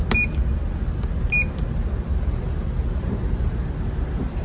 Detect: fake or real real